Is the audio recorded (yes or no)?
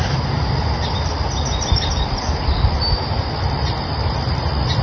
yes